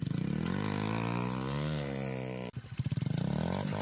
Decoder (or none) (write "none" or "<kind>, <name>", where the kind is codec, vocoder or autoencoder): none